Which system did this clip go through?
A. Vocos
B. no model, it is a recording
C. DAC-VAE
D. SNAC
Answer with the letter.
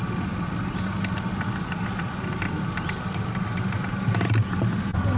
B